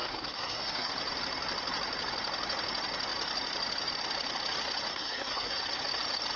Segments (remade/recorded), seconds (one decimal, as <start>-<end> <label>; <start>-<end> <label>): 0.0-0.9 remade; 0.9-4.9 recorded; 4.9-5.6 remade; 5.6-6.4 recorded